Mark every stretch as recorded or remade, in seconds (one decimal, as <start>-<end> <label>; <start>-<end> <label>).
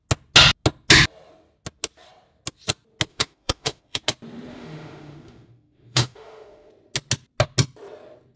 0.0-3.1 recorded; 3.1-4.0 remade; 4.0-4.5 recorded; 4.5-6.7 remade; 6.7-8.4 recorded